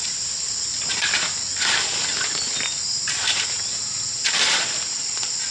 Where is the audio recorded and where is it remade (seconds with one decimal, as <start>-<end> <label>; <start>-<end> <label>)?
0.0-5.5 recorded